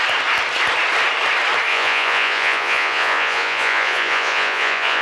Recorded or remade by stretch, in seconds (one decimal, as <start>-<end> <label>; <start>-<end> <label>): 0.0-1.7 recorded; 1.7-5.0 remade